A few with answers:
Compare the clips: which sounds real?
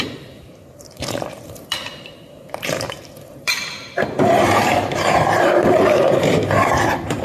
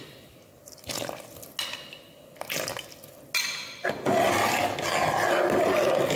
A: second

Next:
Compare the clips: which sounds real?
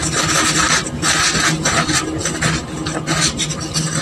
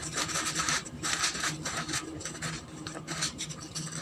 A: first